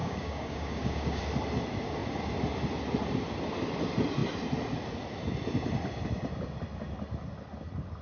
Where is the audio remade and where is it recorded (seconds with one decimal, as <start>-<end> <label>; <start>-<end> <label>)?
0.0-1.2 remade; 1.2-8.0 recorded